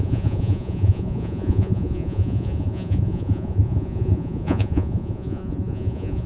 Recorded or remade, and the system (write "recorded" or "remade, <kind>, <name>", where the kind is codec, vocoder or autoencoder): remade, vocoder, Vocos